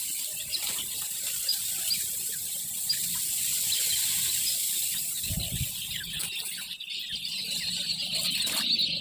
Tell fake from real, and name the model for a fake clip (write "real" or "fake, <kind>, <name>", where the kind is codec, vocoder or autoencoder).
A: real